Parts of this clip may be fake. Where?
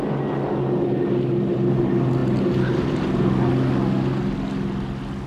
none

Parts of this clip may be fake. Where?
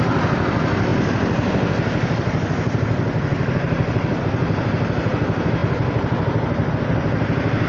none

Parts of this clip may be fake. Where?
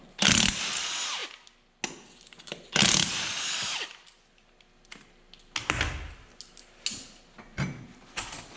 none